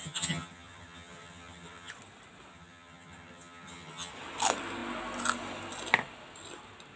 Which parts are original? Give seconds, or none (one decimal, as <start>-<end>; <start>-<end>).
1.9-2.5; 4.1-7.0